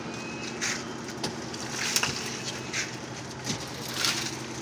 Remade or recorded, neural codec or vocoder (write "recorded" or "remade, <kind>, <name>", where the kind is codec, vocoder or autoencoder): recorded